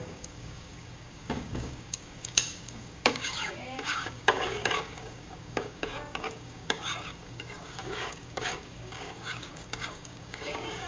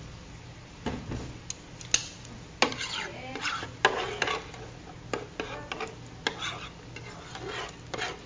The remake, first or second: first